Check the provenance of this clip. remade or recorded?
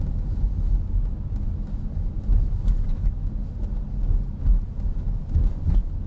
recorded